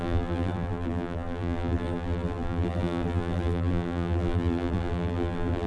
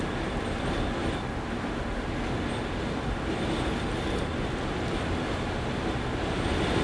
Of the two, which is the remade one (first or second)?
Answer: first